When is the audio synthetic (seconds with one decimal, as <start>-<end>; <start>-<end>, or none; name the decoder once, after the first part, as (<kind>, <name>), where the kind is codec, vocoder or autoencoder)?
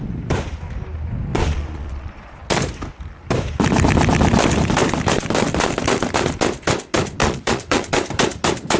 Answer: 1.3-2.4 (vocoder, Vocos); 7.2-7.9